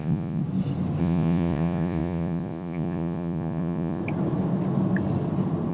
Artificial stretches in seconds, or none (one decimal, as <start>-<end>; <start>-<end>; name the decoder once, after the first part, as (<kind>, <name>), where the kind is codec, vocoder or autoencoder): 0.0-0.4 (vocoder, Vocos); 1.0-4.0